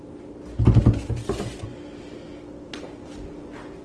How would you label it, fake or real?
real